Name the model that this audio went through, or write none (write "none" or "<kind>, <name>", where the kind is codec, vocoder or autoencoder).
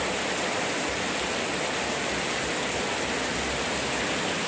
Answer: none